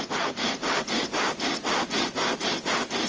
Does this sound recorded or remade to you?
recorded